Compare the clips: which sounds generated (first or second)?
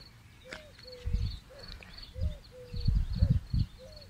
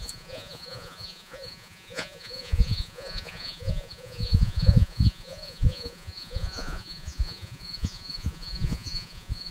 second